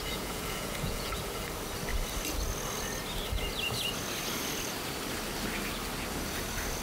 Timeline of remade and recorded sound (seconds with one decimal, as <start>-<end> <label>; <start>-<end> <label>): 0.0-1.2 remade; 1.2-6.8 recorded

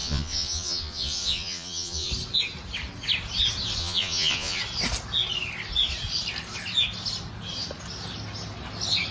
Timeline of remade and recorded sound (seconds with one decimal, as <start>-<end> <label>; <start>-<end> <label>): 0.0-2.1 remade; 2.1-3.8 recorded; 3.8-4.6 remade; 4.6-9.1 recorded

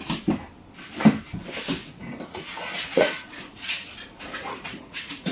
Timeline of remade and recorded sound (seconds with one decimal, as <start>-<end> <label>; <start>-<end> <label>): 0.0-1.8 recorded; 1.8-5.3 remade

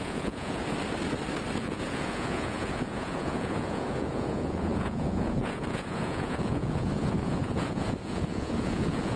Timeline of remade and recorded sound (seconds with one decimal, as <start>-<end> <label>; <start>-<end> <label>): 0.0-0.6 remade; 0.6-1.6 recorded; 1.6-9.2 remade